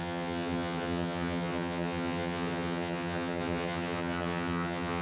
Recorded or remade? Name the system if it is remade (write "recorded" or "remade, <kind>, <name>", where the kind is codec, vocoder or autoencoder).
remade, vocoder, HiFi-GAN